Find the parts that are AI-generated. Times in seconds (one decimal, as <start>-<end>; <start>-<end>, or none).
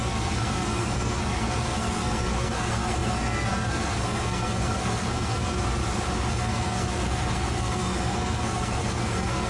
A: 0.0-5.8; 6.3-9.5